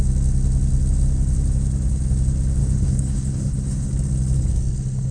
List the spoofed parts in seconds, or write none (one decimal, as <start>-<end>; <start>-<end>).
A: 2.6-3.9